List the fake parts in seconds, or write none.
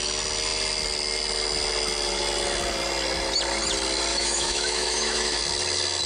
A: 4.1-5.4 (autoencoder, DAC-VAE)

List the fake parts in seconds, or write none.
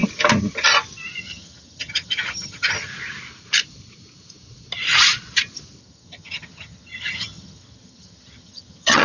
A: 1.2-2.9 (vocoder, HiFi-GAN); 5.8-9.0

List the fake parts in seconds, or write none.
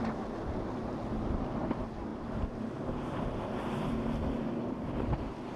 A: 2.1-5.6 (vocoder, BigVGAN v2)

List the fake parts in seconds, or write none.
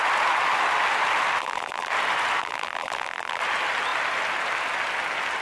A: 1.4-1.9 (vocoder, BigVGAN v2); 2.4-3.4